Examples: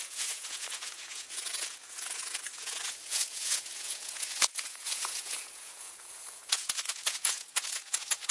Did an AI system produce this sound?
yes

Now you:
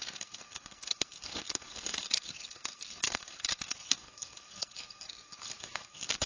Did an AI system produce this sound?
yes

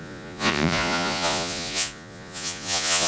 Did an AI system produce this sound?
yes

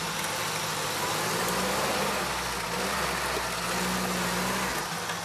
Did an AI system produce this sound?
no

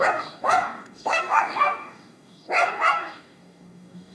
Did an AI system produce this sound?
yes